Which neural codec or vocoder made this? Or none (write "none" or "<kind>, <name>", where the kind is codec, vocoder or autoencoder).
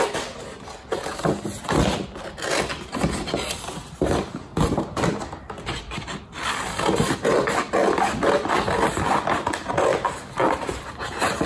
none